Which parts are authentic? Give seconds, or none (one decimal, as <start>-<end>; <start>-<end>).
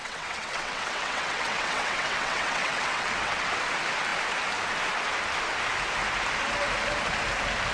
3.5-7.7